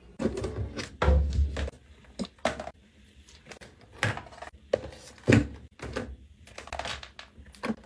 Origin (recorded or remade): recorded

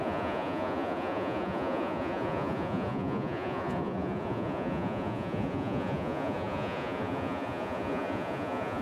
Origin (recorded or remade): remade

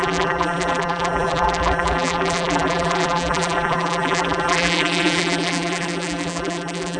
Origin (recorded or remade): remade